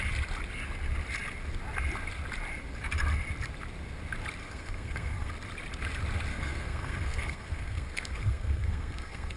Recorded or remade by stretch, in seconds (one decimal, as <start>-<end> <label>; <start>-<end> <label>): 0.0-4.4 recorded; 4.4-5.3 remade; 5.3-6.3 recorded; 6.3-9.4 remade